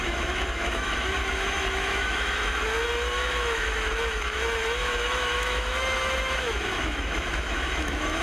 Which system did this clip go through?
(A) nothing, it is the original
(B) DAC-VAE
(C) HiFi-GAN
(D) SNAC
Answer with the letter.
B